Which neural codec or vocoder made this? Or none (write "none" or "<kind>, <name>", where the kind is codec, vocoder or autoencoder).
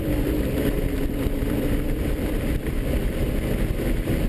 vocoder, BigVGAN v2